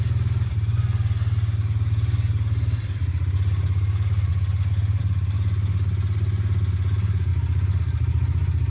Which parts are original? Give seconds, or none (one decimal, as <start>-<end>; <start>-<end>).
0.0-8.7